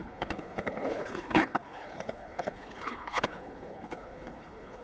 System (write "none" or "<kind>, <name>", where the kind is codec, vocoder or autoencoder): codec, HILCodec